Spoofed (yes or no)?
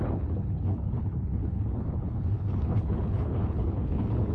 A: yes